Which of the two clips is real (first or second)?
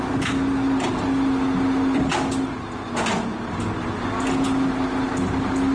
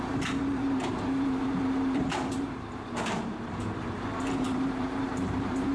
first